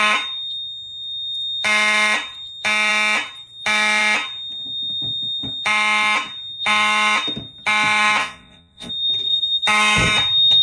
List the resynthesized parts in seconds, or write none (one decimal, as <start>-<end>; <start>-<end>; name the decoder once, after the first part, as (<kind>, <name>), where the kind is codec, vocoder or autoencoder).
8.2-8.9 (vocoder, Vocos)